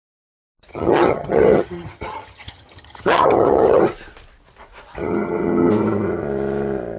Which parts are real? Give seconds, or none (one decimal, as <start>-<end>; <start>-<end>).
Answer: 0.0-0.7; 3.8-5.0; 5.7-7.0